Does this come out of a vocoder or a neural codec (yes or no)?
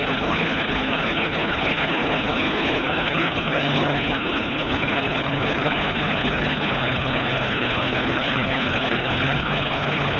yes